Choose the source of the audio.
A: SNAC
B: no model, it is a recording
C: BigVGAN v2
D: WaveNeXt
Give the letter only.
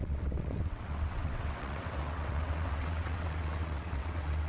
D